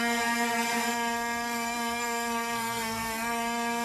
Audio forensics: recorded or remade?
remade